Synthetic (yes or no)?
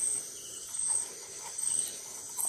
no